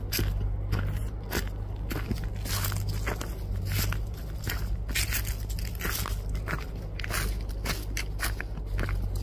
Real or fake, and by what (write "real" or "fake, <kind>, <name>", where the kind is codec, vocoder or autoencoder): real